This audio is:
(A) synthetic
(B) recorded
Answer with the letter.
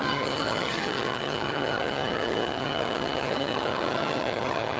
A